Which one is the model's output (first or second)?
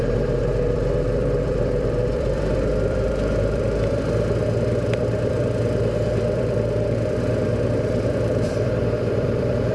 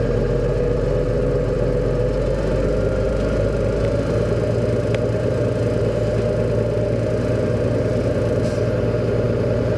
first